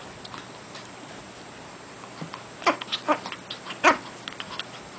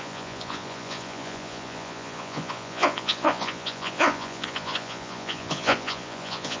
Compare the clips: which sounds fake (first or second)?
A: second